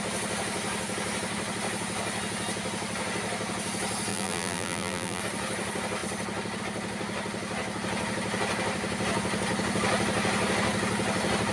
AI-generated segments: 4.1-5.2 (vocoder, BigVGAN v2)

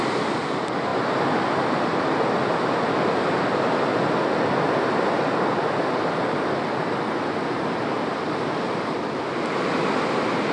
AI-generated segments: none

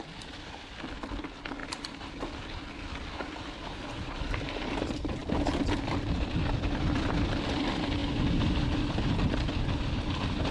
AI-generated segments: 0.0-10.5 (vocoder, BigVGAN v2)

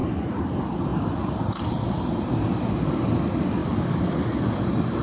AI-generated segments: 0.0-0.9 (vocoder, BigVGAN v2); 2.5-5.0